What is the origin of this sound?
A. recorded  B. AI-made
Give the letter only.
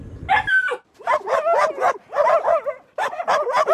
A